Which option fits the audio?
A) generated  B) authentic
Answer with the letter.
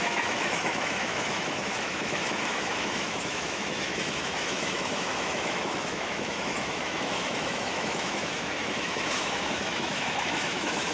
A